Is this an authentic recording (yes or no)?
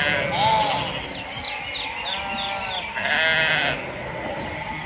yes